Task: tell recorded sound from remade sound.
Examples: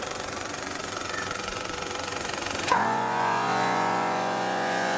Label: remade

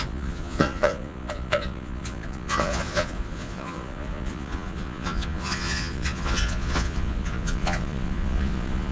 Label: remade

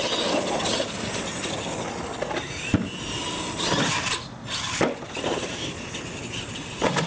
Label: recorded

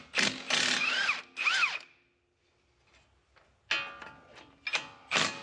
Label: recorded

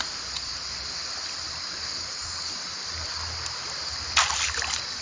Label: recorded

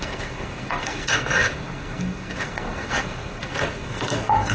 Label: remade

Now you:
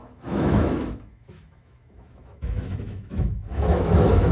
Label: remade